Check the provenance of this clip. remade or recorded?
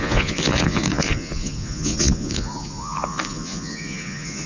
remade